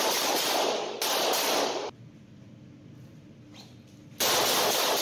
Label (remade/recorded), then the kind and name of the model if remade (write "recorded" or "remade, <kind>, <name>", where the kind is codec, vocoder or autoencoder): recorded